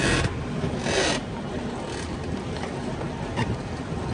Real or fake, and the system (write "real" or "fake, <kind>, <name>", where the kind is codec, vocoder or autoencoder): real